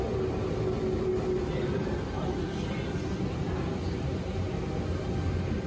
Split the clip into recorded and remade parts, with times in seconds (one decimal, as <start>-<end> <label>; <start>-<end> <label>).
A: 0.0-5.7 recorded